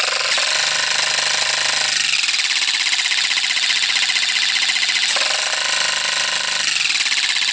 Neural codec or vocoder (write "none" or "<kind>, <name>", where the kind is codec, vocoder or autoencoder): none